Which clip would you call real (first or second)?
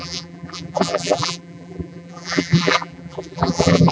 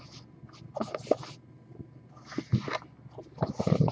second